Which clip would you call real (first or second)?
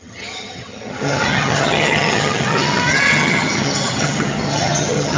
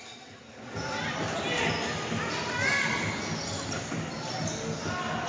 second